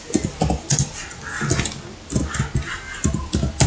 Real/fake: real